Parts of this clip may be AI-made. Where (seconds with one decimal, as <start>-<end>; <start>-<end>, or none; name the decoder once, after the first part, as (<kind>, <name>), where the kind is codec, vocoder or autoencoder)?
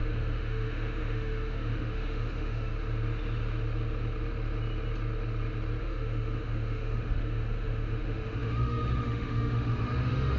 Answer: 0.0-2.7 (autoencoder, DAC-VAE); 5.8-10.4